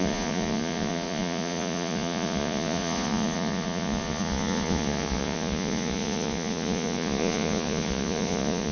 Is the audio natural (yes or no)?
no